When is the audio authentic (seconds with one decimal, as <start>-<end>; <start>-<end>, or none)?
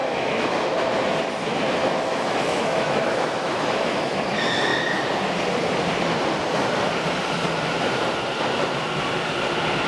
0.5-1.8; 4.2-9.9